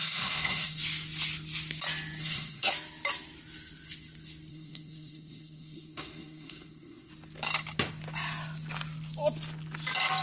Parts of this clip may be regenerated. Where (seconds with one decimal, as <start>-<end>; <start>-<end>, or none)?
0.0-0.8; 2.2-2.7; 4.5-7.1